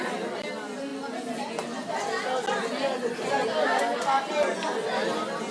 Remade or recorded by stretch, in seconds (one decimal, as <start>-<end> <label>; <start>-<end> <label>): 0.0-5.5 recorded